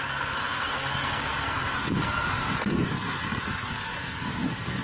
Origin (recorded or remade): remade